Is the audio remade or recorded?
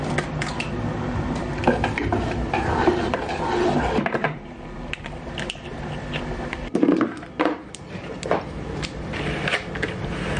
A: remade